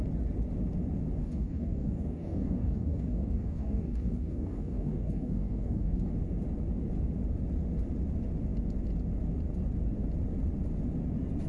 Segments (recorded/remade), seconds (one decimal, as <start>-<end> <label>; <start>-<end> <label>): 0.0-1.2 recorded; 1.2-6.1 remade; 6.1-11.5 recorded

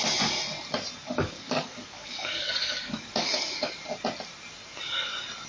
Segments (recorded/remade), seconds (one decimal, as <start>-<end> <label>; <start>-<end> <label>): 0.0-1.0 recorded; 1.0-3.7 remade; 3.7-5.5 recorded

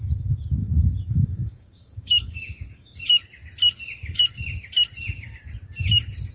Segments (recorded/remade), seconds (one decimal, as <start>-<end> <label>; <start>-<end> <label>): 0.0-0.6 recorded; 0.6-3.0 remade; 3.0-6.3 recorded